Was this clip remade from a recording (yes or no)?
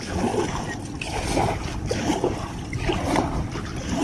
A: no